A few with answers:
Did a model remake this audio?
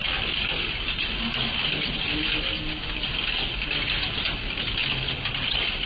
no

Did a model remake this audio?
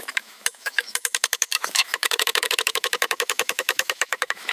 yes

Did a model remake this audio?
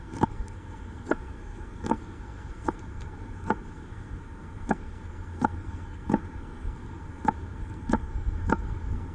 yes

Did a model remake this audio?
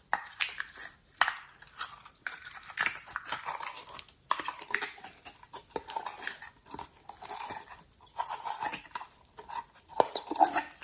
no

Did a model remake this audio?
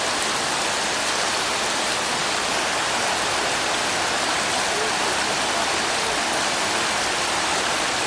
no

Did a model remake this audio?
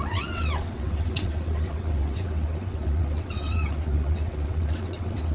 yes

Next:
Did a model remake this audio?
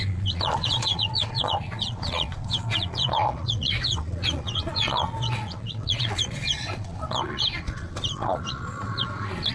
yes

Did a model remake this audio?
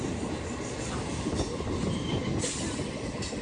no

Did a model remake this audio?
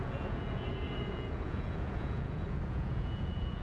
yes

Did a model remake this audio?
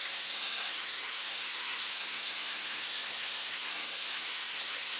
yes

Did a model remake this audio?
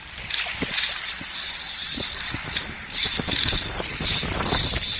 yes